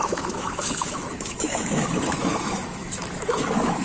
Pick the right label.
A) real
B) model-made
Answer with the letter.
B